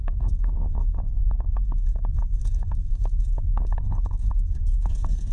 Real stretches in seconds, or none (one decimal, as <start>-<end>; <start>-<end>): none